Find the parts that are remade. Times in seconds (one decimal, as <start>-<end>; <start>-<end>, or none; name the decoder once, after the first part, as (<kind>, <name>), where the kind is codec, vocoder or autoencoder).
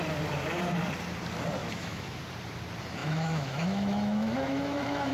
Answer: 1.6-2.2 (autoencoder, DAC-VAE); 3.0-5.1